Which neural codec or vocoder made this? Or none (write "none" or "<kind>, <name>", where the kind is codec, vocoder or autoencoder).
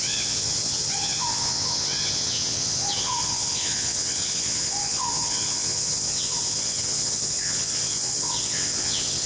vocoder, WaveNeXt